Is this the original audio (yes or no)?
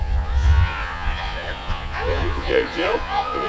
no